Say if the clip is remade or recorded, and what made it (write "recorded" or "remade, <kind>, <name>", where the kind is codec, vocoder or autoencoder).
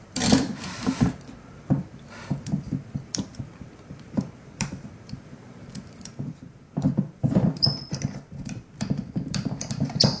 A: remade, vocoder, BigVGAN v2